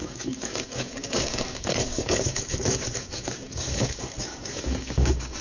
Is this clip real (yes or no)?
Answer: no